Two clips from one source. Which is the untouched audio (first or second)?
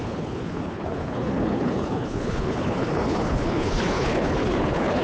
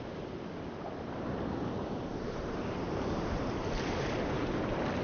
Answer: second